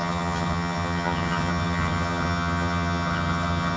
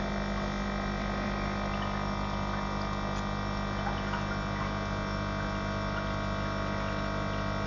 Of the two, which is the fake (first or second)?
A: first